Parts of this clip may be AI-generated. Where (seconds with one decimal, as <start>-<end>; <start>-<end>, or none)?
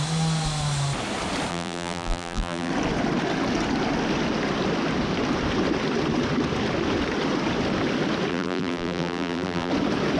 1.5-2.7; 8.3-9.7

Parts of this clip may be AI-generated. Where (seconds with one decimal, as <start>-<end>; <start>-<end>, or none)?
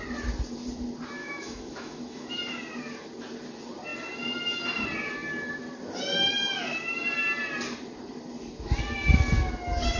1.2-2.4